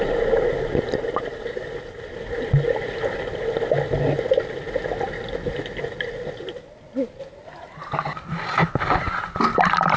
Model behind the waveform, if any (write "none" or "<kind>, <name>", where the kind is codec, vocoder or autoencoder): none